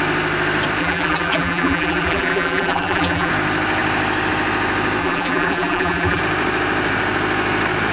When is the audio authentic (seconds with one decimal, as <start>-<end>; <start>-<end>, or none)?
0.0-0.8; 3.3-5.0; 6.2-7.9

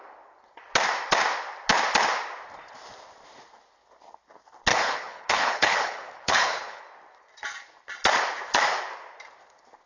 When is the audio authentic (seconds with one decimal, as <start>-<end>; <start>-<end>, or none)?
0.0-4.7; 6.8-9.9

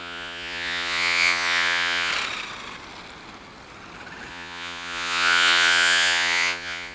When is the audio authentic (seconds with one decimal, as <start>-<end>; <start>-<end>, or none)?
2.1-4.3